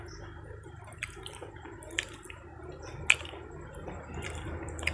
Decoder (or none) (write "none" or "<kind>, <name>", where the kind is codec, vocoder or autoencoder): none